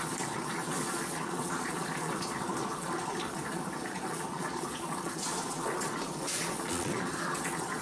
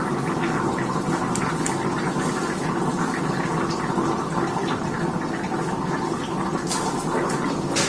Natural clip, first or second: second